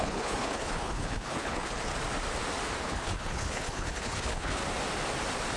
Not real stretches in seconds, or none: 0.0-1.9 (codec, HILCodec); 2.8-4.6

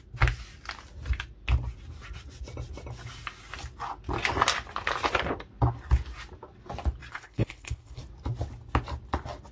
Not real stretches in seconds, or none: 7.1-8.0 (codec, HILCodec)

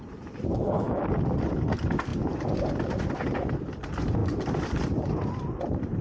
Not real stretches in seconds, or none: 0.5-1.0 (codec, HILCodec)

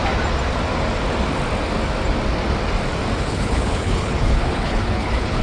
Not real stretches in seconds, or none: 3.2-5.4 (codec, HILCodec)

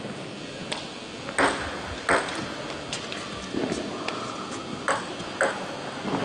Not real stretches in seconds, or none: none